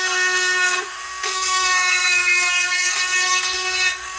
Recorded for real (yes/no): no